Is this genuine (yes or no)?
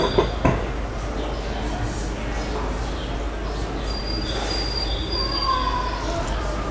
yes